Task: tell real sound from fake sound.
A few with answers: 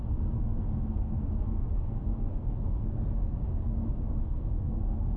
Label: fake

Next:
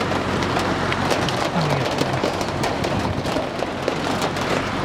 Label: real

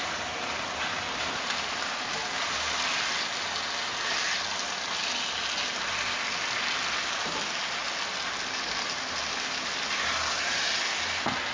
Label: real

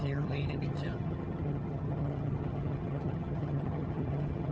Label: fake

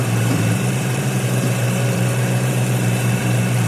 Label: fake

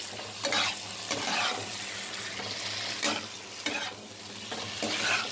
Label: real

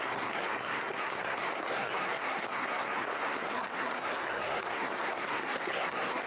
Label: fake